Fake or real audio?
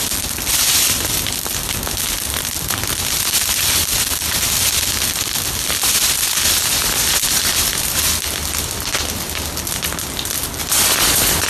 real